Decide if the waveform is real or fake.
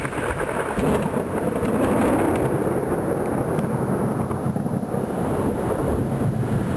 real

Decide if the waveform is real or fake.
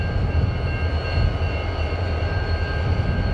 real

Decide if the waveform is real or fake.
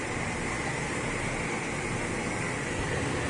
real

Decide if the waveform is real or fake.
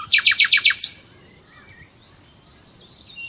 fake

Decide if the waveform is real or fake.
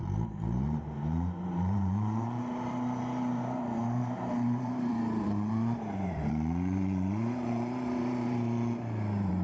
fake